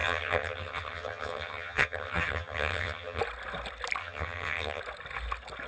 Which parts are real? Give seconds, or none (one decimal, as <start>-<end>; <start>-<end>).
3.2-4.0; 4.8-5.7